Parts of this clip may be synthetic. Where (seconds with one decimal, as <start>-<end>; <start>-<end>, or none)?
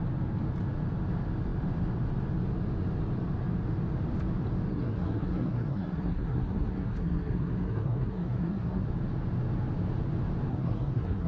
4.7-8.9; 10.5-11.3